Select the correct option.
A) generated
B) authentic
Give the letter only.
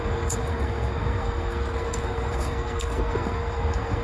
A